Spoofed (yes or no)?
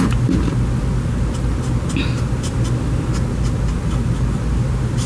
no